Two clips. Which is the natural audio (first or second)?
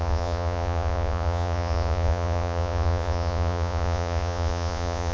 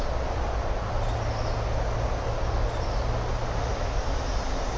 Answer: second